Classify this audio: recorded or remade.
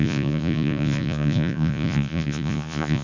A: remade